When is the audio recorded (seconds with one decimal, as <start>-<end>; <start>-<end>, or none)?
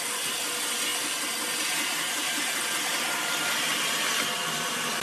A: 0.0-4.4